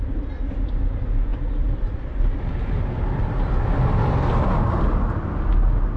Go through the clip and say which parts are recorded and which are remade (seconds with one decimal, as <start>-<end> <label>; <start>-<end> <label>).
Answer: 0.0-6.0 recorded